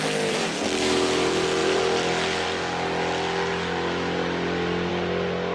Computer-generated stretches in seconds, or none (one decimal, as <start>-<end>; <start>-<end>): none